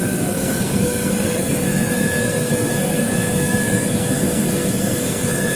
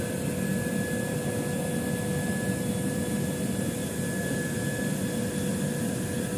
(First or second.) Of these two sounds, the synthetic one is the first